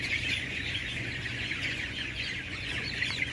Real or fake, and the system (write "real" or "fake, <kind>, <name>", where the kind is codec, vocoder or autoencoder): fake, vocoder, Vocos